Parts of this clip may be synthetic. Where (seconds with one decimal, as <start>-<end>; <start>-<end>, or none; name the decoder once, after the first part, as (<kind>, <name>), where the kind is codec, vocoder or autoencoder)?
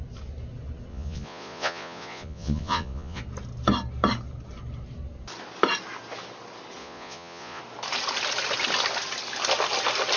0.9-3.2 (vocoder, Vocos); 6.8-7.6